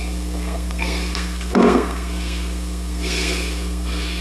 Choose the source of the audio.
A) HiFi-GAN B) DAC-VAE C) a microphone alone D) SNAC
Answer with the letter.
D